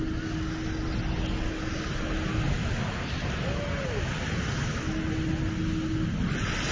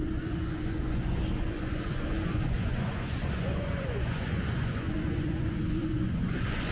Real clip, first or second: first